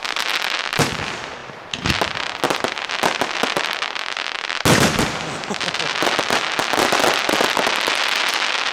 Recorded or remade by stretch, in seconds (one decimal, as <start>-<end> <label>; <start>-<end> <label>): 0.0-8.7 recorded